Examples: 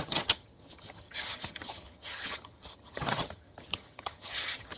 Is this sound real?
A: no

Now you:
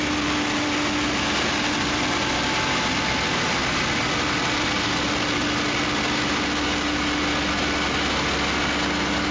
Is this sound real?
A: yes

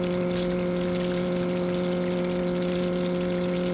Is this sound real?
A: no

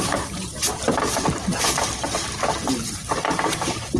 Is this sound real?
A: no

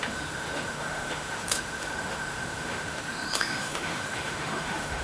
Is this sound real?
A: no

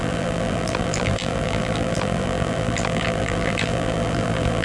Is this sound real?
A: no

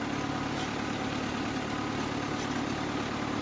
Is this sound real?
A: yes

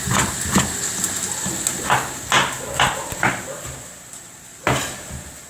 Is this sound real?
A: yes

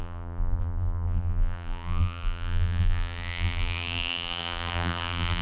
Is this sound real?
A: no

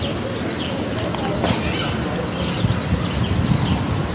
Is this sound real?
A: yes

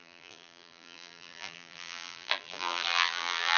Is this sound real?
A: no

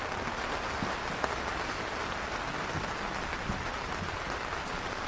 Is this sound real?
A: yes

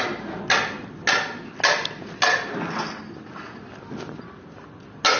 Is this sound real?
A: yes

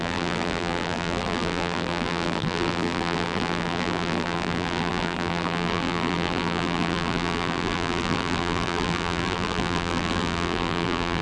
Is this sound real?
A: no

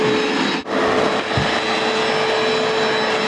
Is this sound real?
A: yes